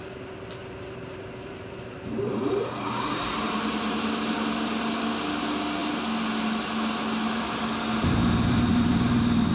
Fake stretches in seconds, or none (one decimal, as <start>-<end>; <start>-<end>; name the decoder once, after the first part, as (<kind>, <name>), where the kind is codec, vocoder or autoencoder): 0.6-2.4 (vocoder, BigVGAN v2)